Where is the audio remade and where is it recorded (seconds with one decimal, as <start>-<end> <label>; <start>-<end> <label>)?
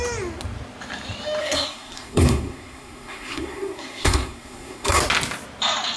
0.0-1.4 recorded; 1.4-5.0 remade; 5.0-6.0 recorded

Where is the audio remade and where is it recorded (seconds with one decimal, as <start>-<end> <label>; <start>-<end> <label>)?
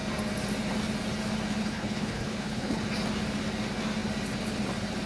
0.0-1.6 recorded; 1.6-2.8 remade; 2.8-5.1 recorded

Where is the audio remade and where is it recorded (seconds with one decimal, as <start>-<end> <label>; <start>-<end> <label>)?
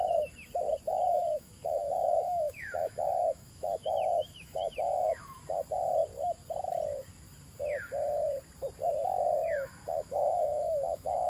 0.0-0.9 recorded; 0.9-5.4 remade; 5.4-9.4 recorded; 9.4-11.3 remade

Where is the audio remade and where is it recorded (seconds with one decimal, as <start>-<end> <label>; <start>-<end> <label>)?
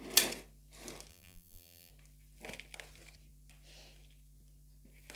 0.0-1.1 recorded; 1.1-1.9 remade; 1.9-5.2 recorded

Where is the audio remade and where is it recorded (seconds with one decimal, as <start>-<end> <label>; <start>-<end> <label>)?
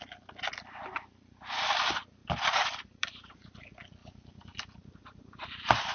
0.0-2.2 recorded; 2.2-3.6 remade; 3.6-4.0 recorded; 4.0-5.9 remade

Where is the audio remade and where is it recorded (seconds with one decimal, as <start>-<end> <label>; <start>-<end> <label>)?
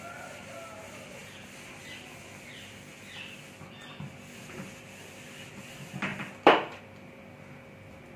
0.0-2.9 recorded; 2.9-3.4 remade; 3.4-6.1 recorded; 6.1-6.8 remade; 6.8-8.2 recorded